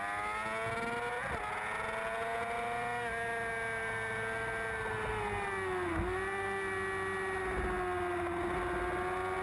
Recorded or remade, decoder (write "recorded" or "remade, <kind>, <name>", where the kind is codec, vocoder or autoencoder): recorded